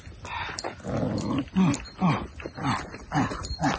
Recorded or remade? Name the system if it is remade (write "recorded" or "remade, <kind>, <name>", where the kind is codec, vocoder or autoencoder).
recorded